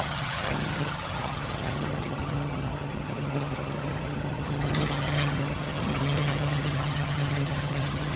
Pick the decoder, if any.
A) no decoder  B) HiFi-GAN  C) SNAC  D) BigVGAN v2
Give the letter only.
B